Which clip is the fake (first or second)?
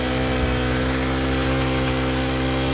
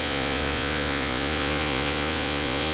second